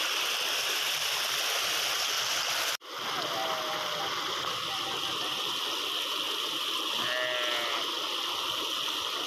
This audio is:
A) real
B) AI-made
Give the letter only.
A